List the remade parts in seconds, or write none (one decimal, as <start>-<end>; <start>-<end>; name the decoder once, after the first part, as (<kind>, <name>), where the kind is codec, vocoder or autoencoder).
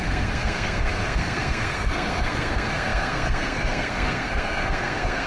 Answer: 0.0-5.3 (codec, SNAC)